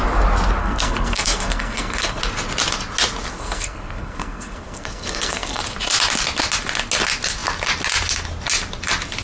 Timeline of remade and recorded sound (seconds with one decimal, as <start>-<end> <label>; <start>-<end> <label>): 0.0-0.6 recorded; 0.6-2.2 remade; 2.2-3.3 recorded; 3.3-5.6 remade; 5.6-9.2 recorded